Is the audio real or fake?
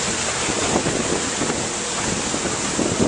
real